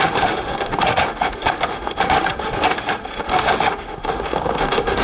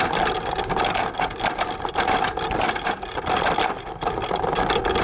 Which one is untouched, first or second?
second